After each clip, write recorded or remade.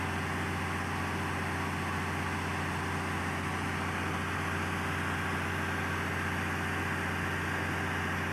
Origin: recorded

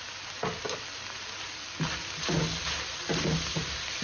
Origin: recorded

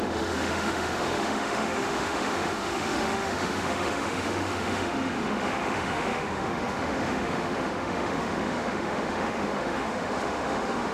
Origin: remade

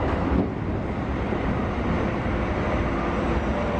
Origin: recorded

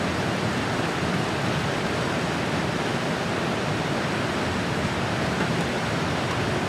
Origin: remade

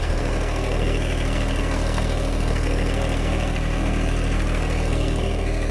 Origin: remade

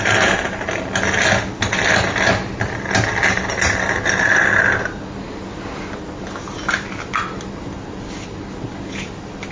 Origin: recorded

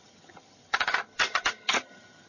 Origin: remade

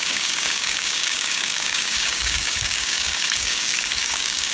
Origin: remade